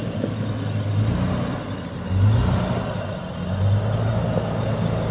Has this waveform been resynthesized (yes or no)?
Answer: no